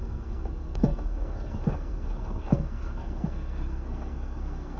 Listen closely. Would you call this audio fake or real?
fake